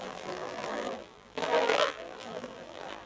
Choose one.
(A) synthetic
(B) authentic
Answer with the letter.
A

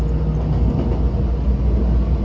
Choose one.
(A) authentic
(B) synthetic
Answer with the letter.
A